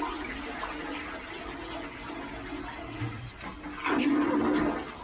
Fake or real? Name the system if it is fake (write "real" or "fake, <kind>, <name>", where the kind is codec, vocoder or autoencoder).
real